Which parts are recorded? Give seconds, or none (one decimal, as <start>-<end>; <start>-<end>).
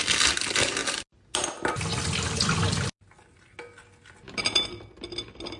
0.0-5.6